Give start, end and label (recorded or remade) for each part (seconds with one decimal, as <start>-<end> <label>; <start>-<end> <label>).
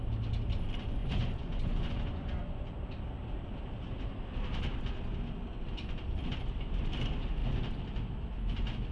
0.0-1.0 recorded; 1.0-2.6 remade; 2.6-8.9 recorded